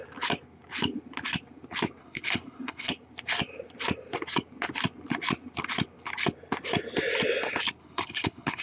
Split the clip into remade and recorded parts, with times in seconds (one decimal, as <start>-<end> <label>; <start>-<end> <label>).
0.0-2.0 recorded; 2.0-2.9 remade; 2.9-7.8 recorded; 7.8-8.6 remade